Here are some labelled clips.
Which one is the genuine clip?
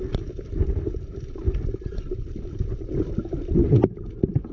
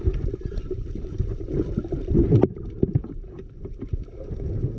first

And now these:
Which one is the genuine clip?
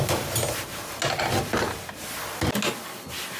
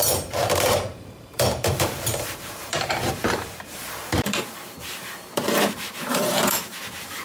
first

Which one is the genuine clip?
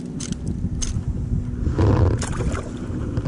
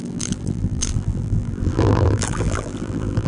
first